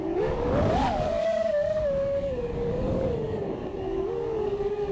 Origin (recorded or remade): remade